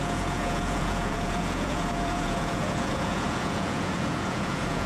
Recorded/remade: remade